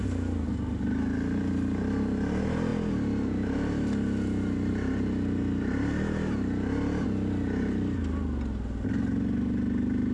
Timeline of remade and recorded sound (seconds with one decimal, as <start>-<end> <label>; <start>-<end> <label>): 0.0-10.1 recorded